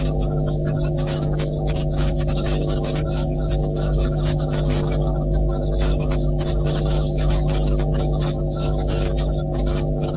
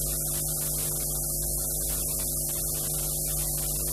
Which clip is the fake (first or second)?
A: first